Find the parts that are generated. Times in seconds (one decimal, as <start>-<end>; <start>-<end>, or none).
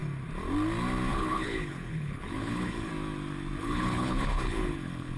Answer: 1.1-2.9; 3.6-5.2